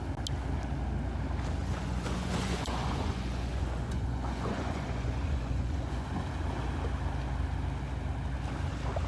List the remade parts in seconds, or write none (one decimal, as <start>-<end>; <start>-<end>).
1.6-6.1